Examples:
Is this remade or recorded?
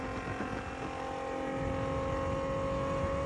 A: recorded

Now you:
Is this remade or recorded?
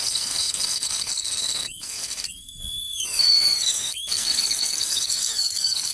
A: remade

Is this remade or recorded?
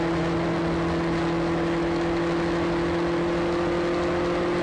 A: recorded